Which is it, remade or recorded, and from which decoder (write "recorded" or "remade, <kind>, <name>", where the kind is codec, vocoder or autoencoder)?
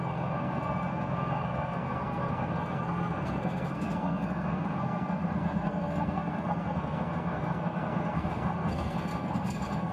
remade, codec, SNAC